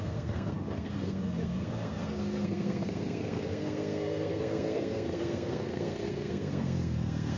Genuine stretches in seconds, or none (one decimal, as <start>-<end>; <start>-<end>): none